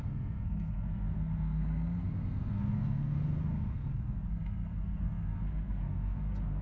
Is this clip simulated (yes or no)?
yes